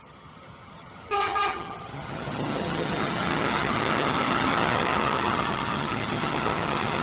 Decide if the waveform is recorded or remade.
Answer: remade